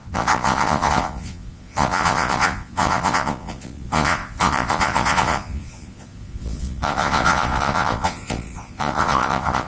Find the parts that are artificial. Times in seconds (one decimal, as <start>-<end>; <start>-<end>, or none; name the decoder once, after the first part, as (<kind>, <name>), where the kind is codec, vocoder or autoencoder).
0.0-9.7 (vocoder, Vocos)